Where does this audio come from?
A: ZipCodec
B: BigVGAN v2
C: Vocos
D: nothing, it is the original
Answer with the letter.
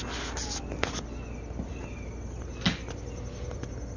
D